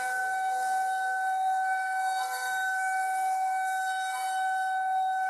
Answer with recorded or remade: remade